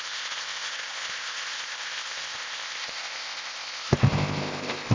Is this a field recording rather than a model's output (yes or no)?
no